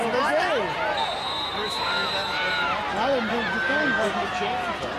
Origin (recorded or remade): remade